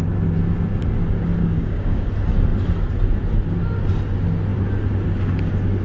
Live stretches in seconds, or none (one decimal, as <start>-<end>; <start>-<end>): 0.0-1.4; 2.1-5.8